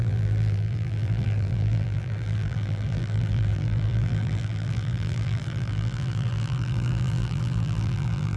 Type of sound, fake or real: fake